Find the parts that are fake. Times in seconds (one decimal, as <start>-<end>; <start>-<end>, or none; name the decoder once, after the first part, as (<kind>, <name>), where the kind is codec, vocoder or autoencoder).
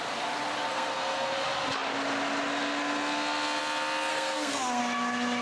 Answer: 0.7-1.3 (codec, SNAC); 4.1-4.8